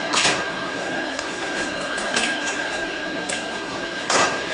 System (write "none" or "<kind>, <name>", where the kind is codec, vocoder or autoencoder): codec, SNAC